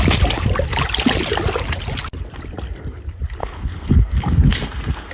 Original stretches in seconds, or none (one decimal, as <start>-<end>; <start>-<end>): 0.0-3.4